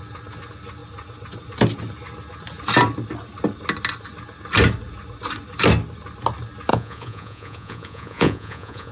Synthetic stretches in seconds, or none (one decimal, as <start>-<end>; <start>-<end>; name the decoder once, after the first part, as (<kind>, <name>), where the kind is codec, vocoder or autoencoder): 6.7-8.9 (vocoder, Vocos)